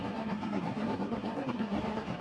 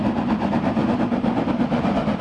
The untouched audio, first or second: second